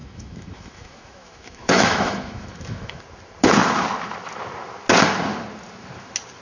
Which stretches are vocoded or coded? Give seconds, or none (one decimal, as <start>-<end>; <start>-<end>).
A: 0.0-3.0